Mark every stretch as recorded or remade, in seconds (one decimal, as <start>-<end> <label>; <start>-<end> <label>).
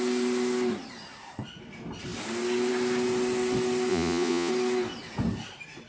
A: 0.0-3.9 recorded; 3.9-4.5 remade; 4.5-5.9 recorded